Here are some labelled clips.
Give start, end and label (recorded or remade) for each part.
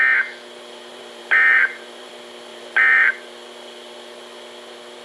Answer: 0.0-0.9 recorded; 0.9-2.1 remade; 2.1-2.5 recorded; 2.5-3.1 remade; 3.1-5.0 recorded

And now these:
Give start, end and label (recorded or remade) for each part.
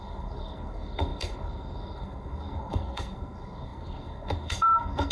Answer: 0.0-5.1 remade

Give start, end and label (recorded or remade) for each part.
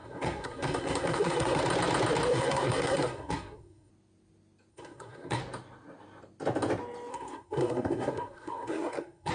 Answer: 0.0-1.6 remade; 1.6-2.3 recorded; 2.3-3.9 remade; 3.9-4.7 recorded; 4.7-5.4 remade; 5.4-7.1 recorded; 7.1-9.3 remade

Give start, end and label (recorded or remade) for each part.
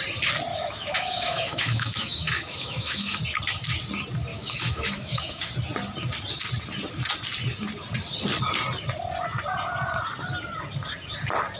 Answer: 0.0-0.5 recorded; 0.5-3.2 remade; 3.2-4.3 recorded; 4.3-5.5 remade; 5.5-11.6 recorded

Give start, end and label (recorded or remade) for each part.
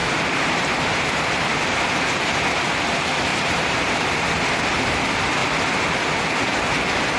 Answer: 0.0-1.2 remade; 1.2-3.3 recorded; 3.3-4.2 remade; 4.2-7.2 recorded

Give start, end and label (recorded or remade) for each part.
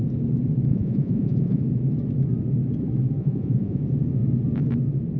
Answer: 0.0-0.7 recorded; 0.7-1.6 remade; 1.6-3.2 recorded; 3.2-3.8 remade; 3.8-5.2 recorded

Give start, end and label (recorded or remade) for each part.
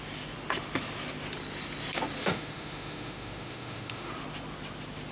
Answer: 0.0-2.2 recorded; 2.2-4.1 remade; 4.1-5.1 recorded